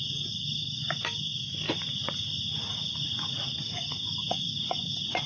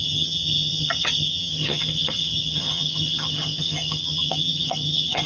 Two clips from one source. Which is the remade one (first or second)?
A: second